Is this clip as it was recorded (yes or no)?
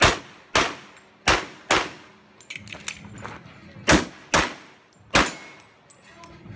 yes